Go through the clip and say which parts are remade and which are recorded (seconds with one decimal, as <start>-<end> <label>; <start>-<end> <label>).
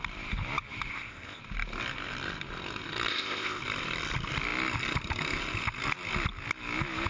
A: 0.0-0.9 recorded; 0.9-1.4 remade; 1.4-3.1 recorded; 3.1-3.6 remade; 3.6-7.1 recorded